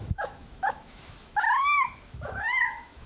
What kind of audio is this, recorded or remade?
remade